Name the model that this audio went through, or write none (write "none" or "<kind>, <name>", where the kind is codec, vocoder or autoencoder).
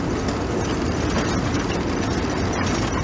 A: none